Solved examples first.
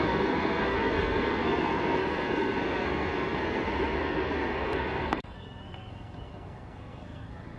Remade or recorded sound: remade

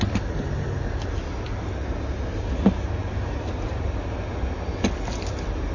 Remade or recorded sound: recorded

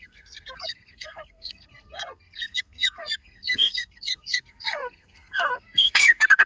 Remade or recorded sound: remade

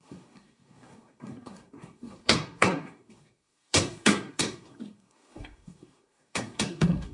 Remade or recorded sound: remade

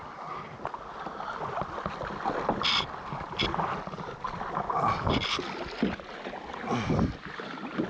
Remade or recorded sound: recorded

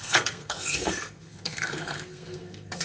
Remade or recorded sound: remade